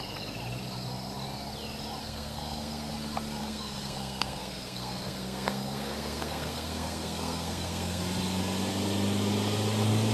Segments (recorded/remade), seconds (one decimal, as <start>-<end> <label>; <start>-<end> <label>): 0.0-2.0 recorded; 2.0-2.9 remade; 2.9-3.4 recorded; 3.4-8.0 remade; 8.0-10.1 recorded